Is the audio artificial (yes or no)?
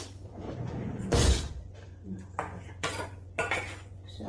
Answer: yes